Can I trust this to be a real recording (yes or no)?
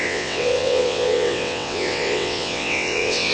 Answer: no